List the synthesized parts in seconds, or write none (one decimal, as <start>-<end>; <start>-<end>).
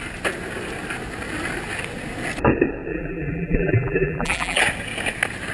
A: 2.9-4.6